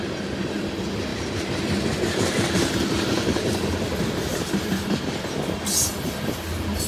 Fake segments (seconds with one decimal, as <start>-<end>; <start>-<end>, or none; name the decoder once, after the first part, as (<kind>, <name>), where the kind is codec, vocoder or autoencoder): 1.1-5.2 (vocoder, BigVGAN v2)